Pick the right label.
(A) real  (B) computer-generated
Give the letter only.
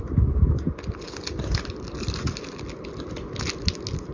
A